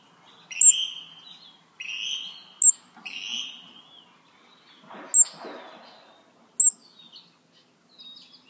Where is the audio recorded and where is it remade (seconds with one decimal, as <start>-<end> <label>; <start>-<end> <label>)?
0.0-8.5 recorded